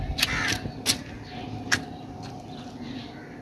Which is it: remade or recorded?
recorded